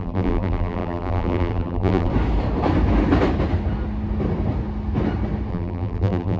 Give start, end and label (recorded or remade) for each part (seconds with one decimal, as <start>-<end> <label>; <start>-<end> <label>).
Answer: 0.0-2.1 remade; 2.1-5.5 recorded; 5.5-6.4 remade